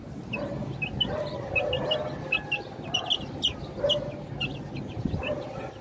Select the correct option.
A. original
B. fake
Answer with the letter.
A